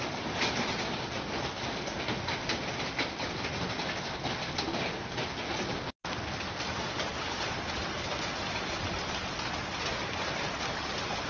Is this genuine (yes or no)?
yes